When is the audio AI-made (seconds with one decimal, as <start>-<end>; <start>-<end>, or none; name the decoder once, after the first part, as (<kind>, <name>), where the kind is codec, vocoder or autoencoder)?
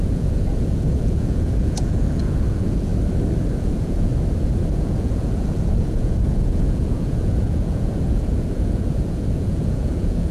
0.0-2.9 (vocoder, Vocos); 3.6-4.1; 4.7-10.3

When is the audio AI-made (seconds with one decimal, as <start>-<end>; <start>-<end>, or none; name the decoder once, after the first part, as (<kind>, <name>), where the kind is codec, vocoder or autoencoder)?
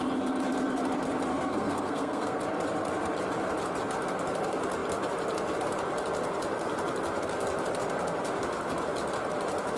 1.3-2.4 (codec, SNAC)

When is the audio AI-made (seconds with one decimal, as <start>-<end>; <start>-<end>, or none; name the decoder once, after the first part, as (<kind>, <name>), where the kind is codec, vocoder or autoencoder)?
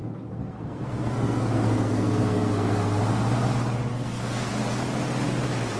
0.0-3.0 (codec, SNAC); 3.9-4.5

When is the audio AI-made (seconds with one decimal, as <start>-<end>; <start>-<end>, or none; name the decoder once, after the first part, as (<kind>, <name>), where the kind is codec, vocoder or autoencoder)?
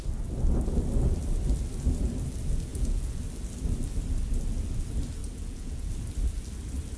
2.7-3.2 (vocoder, Vocos); 5.2-5.9